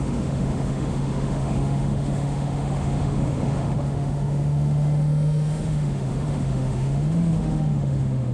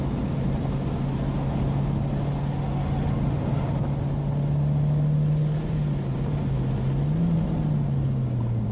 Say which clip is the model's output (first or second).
first